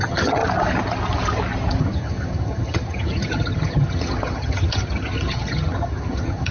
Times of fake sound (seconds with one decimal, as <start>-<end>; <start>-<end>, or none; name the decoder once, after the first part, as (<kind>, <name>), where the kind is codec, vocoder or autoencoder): 0.0-0.4 (vocoder, HiFi-GAN); 1.8-6.5